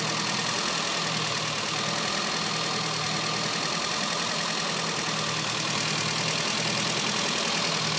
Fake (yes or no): no